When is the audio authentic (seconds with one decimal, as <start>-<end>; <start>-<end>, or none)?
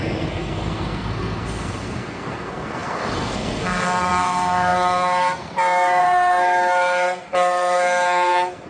none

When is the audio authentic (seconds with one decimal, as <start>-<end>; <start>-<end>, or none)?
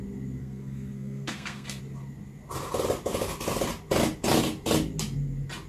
0.0-0.4; 1.8-5.7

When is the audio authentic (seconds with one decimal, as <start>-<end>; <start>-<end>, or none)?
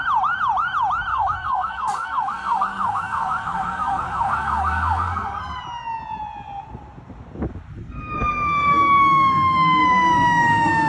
0.0-1.1; 5.6-7.8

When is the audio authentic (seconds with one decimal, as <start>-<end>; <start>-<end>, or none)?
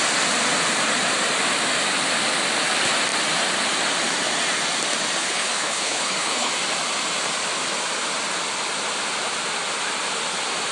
0.0-5.2; 6.5-10.7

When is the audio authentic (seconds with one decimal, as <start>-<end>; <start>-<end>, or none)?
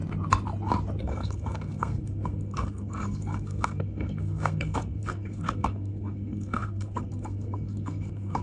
0.0-1.0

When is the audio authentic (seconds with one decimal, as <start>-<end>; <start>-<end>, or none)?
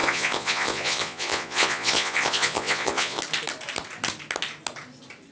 3.2-5.3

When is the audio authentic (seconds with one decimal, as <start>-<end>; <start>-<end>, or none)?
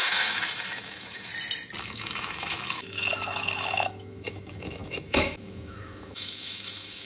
1.3-1.8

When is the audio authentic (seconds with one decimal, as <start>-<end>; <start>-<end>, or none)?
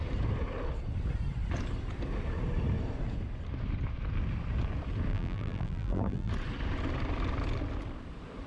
0.0-5.1; 6.3-8.5